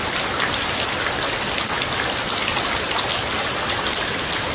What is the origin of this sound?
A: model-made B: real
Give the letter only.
B